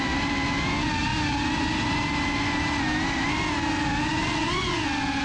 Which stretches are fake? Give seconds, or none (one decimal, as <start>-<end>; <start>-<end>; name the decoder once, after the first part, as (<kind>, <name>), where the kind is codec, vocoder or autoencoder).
none